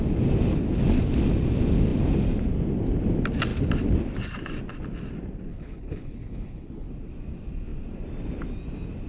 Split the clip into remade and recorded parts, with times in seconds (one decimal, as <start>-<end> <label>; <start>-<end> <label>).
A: 0.0-5.5 recorded; 5.5-6.9 remade; 6.9-9.1 recorded